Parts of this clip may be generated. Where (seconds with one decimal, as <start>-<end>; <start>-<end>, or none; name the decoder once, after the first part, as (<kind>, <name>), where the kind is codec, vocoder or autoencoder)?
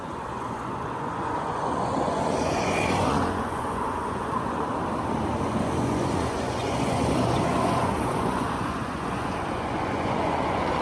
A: 0.0-4.7 (vocoder, Vocos); 5.4-10.8